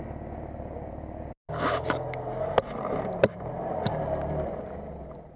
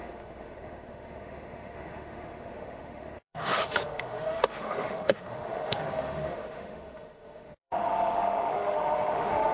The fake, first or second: second